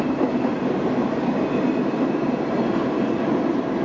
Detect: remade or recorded recorded